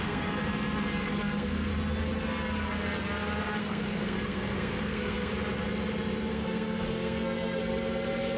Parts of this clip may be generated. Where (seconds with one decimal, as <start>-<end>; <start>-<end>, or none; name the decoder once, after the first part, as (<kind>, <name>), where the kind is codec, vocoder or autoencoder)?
0.0-0.4 (codec, SNAC); 1.0-1.7; 3.6-5.3; 6.3-7.6